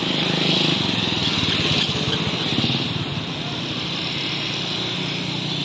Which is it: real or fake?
real